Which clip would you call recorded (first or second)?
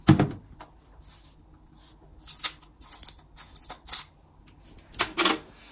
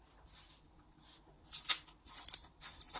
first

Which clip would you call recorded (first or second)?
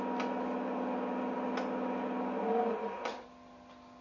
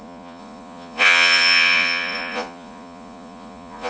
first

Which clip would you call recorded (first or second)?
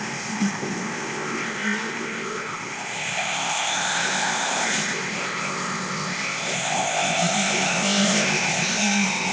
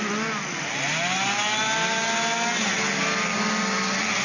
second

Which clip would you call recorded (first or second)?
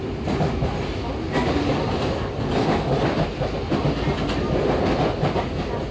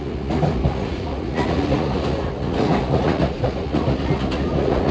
first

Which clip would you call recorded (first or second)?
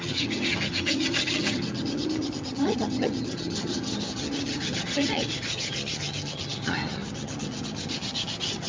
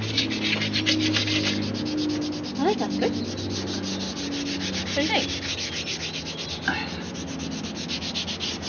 second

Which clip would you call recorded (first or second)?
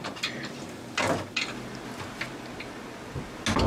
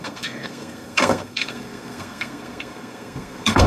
first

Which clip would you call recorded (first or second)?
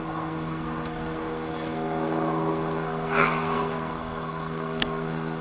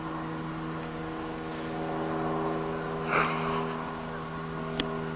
second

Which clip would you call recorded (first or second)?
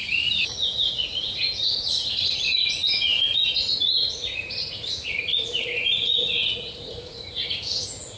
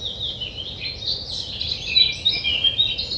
second